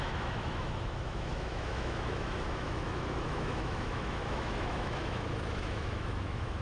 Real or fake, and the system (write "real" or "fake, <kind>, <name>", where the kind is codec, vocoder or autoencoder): fake, autoencoder, DAC-VAE